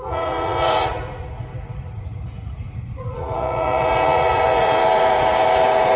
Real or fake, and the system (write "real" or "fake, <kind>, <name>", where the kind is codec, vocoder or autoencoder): fake, vocoder, Vocos